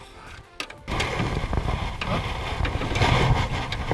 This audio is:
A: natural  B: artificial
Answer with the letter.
A